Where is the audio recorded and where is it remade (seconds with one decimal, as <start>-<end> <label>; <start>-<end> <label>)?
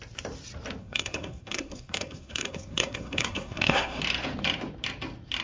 0.0-0.8 recorded; 0.8-4.0 remade; 4.0-5.4 recorded